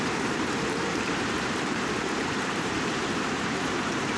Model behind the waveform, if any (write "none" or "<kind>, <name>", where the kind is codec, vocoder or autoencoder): vocoder, BigVGAN v2